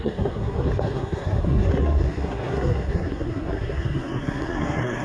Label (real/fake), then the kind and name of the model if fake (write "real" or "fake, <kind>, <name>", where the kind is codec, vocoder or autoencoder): fake, codec, SNAC